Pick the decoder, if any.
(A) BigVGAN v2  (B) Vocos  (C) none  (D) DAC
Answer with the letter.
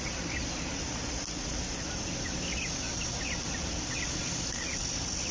C